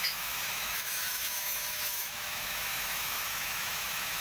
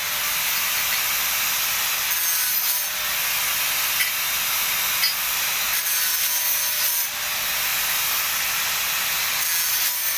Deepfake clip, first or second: first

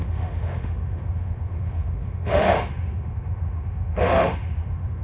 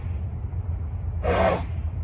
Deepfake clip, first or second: first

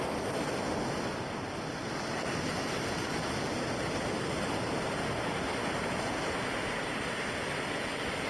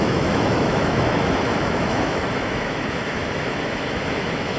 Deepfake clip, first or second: second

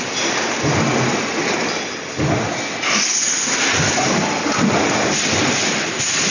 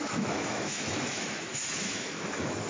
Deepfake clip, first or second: second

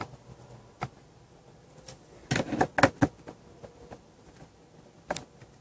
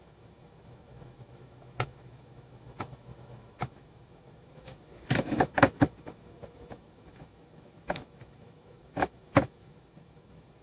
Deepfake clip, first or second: second